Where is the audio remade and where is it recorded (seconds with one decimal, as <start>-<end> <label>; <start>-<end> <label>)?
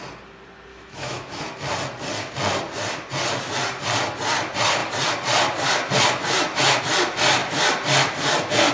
0.0-0.7 recorded; 0.7-1.4 remade; 1.4-8.7 recorded